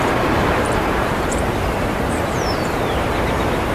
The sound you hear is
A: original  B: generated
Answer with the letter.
B